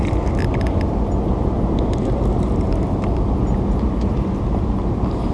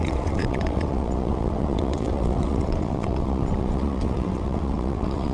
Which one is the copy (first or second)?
second